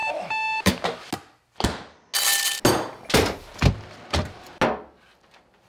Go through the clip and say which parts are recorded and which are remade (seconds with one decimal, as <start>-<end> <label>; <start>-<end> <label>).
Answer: 0.0-0.7 remade; 0.7-5.7 recorded